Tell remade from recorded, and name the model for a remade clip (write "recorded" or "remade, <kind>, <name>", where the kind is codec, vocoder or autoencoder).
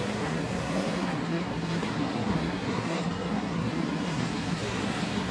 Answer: remade, codec, SNAC